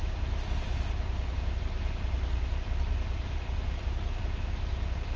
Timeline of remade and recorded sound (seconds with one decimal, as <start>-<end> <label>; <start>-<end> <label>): 0.0-2.3 recorded; 2.3-4.2 remade; 4.2-5.2 recorded